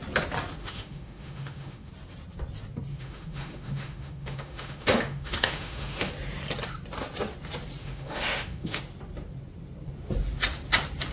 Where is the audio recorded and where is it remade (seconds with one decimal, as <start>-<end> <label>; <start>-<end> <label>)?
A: 0.0-0.6 recorded; 0.6-1.9 remade; 1.9-2.9 recorded; 2.9-6.1 remade; 6.1-7.8 recorded; 7.8-8.8 remade; 8.8-11.1 recorded